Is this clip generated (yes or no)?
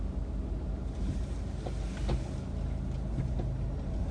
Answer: no